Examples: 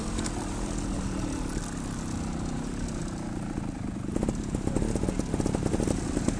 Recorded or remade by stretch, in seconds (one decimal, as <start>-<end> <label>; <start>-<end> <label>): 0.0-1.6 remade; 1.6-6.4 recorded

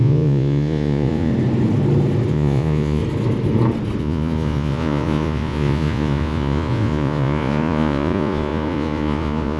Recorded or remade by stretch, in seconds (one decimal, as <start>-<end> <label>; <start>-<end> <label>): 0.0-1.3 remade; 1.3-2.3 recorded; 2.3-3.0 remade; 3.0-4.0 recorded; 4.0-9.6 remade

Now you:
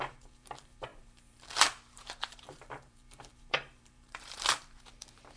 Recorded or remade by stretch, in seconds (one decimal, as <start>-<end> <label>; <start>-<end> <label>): 0.0-5.4 remade

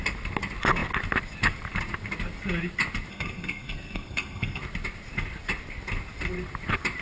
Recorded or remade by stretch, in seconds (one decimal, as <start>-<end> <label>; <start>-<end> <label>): 0.0-3.1 recorded; 3.1-4.6 remade; 4.6-7.0 recorded

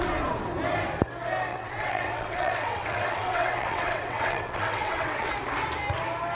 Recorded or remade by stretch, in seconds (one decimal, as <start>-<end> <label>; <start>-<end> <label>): 0.0-1.5 recorded; 1.5-5.3 remade; 5.3-6.3 recorded